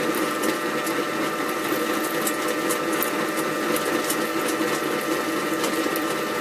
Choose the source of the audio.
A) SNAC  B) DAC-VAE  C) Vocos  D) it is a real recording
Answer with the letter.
D